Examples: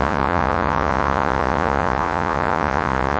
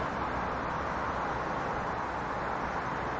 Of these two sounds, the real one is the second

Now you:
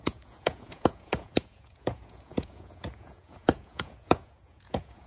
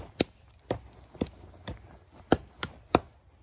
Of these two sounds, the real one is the second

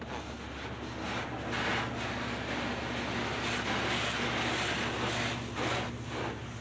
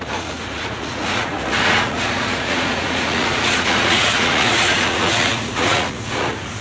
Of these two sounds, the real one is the first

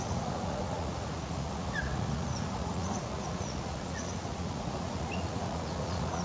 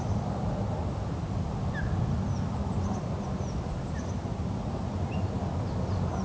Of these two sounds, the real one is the second